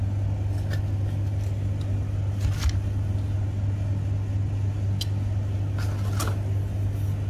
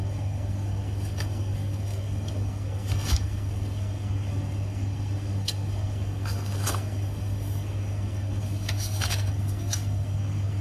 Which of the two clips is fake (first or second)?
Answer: second